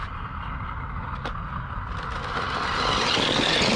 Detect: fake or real real